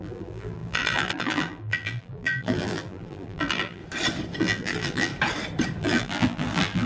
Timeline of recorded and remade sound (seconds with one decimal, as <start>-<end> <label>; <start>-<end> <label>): 0.0-3.8 remade; 3.8-4.4 recorded; 4.4-5.1 remade; 5.1-5.8 recorded; 5.8-6.9 remade